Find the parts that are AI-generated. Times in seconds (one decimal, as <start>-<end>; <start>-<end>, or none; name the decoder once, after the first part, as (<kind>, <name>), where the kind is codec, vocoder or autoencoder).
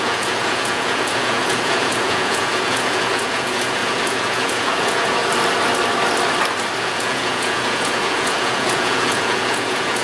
0.0-5.2 (vocoder, Vocos); 6.8-10.0